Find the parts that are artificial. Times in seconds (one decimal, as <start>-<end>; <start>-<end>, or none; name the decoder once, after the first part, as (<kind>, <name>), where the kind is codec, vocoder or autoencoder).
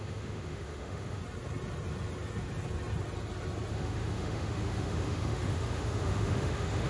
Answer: 0.0-1.2 (autoencoder, DAC-VAE); 3.7-6.9